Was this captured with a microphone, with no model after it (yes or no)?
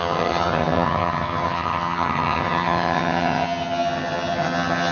no